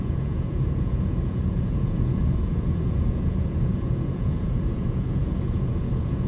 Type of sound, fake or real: fake